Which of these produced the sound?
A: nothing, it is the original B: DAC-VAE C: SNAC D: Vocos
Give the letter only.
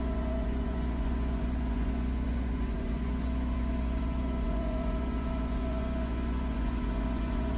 D